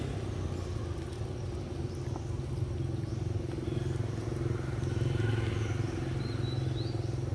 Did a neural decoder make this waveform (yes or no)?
no